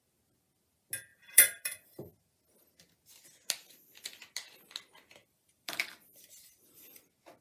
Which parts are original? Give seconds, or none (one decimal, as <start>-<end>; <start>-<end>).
0.0-1.1; 2.1-5.2; 7.0-7.4